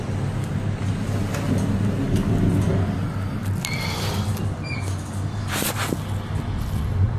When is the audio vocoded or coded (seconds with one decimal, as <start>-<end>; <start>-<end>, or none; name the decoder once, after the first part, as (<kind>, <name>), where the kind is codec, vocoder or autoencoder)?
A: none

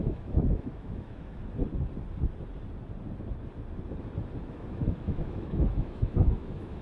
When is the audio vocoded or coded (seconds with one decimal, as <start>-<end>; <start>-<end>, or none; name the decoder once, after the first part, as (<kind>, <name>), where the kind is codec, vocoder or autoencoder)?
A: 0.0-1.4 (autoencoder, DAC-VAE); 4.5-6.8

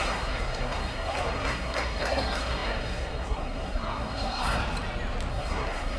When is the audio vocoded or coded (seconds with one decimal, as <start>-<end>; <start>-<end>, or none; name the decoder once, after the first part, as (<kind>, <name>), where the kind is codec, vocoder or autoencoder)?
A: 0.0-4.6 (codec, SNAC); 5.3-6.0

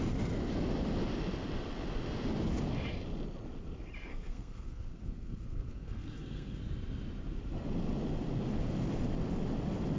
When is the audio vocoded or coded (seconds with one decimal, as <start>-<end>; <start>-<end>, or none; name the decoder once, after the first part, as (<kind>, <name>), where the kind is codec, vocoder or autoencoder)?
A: 4.1-6.6 (codec, SNAC)

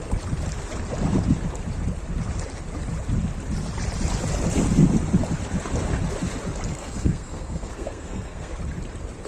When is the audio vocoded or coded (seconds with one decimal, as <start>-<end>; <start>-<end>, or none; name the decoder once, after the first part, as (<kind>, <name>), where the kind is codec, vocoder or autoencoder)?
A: 6.7-8.5 (codec, SNAC)

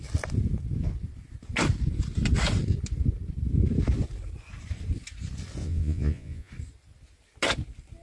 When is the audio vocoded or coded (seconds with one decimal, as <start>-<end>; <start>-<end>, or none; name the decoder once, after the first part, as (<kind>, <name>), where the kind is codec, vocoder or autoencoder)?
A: 5.6-6.5 (vocoder, Vocos)

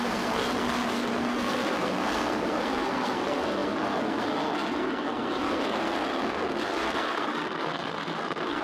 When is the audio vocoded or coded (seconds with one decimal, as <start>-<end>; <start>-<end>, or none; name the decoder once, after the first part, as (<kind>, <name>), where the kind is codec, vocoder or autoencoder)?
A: 0.0-8.6 (codec, SNAC)